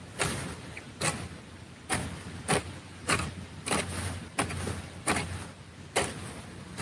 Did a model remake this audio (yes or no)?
no